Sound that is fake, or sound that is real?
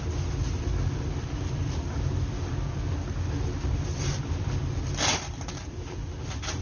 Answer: fake